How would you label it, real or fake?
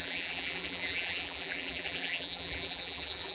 fake